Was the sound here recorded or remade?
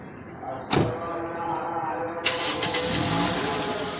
recorded